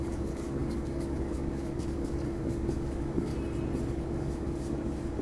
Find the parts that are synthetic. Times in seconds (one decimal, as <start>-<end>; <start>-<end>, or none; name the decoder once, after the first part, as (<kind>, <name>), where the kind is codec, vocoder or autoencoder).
0.0-3.3 (codec, DAC); 3.9-5.2